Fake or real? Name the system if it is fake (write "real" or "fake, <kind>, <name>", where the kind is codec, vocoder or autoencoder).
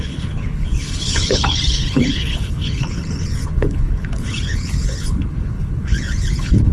fake, codec, HILCodec